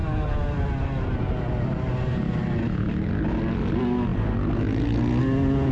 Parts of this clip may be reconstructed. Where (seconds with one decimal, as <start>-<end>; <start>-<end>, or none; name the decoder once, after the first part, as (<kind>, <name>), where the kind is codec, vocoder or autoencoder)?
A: none